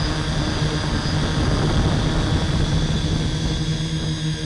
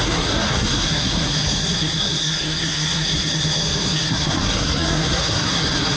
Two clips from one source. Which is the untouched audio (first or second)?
first